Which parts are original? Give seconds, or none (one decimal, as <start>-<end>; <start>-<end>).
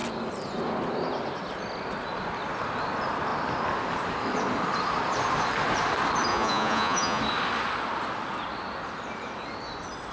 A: 0.0-6.3; 7.2-10.1